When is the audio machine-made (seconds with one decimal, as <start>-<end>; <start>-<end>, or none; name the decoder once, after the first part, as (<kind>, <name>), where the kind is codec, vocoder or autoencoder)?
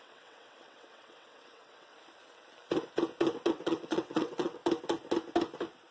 0.0-1.9 (vocoder, WaveNeXt); 3.5-4.6